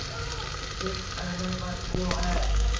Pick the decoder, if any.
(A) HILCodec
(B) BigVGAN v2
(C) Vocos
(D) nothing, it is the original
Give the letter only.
D